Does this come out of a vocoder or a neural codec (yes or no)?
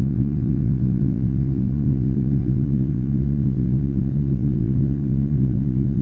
yes